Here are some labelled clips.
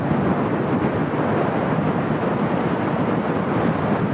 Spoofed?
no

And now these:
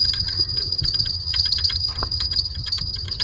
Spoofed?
yes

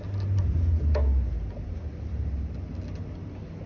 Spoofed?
no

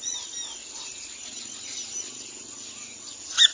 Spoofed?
no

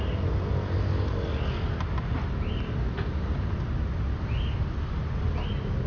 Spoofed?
no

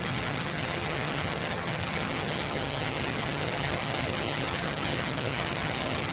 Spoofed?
yes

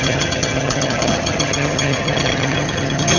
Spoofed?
yes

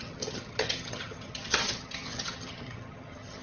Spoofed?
yes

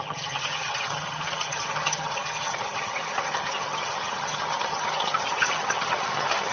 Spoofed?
yes